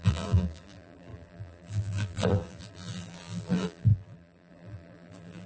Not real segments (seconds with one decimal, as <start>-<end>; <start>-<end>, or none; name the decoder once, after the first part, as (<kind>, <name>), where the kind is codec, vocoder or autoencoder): 0.0-5.5 (vocoder, BigVGAN v2)